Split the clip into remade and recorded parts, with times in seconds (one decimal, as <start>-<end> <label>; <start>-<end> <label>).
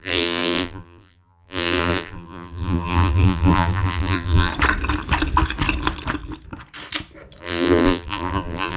0.0-4.5 remade; 4.5-7.4 recorded; 7.4-8.8 remade